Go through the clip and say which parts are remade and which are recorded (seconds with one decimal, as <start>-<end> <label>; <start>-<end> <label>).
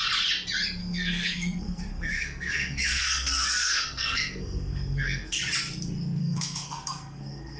0.0-0.8 recorded; 0.8-5.4 remade; 5.4-6.2 recorded; 6.2-7.6 remade